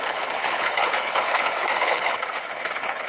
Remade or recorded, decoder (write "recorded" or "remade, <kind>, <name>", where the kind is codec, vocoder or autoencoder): remade, codec, HILCodec